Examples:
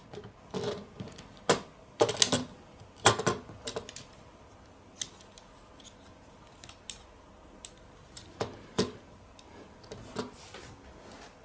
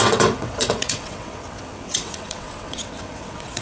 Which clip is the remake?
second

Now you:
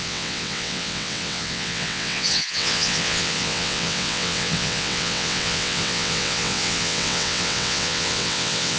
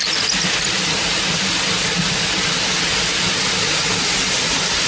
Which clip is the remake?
first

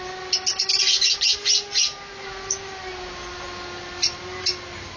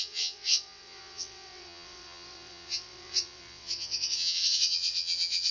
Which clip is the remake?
second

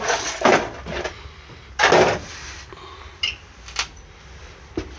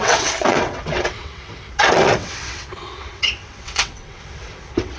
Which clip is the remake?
second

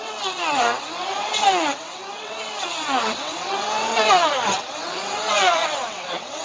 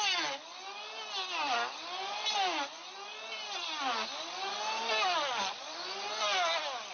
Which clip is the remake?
first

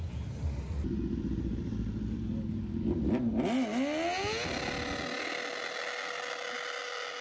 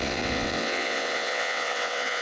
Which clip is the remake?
second